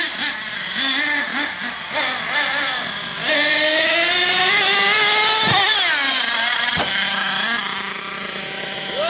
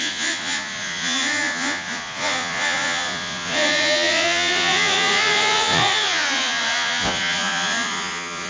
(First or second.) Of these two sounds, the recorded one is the first